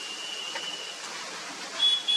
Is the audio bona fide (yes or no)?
yes